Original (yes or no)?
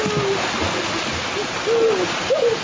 yes